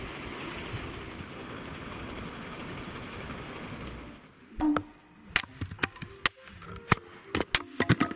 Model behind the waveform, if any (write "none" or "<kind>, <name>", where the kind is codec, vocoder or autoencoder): none